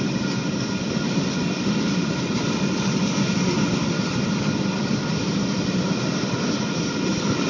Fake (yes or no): no